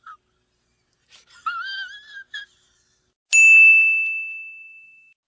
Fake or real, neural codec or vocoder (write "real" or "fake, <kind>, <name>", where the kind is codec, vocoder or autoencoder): real